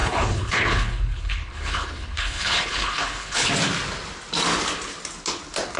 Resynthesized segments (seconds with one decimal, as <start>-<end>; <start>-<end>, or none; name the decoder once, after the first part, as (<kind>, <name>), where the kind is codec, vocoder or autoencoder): 0.0-3.5 (codec, HILCodec)